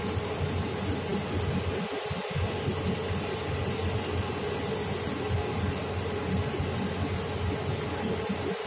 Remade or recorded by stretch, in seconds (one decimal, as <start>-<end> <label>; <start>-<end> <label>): 0.0-8.7 recorded